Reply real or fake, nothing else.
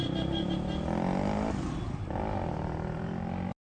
real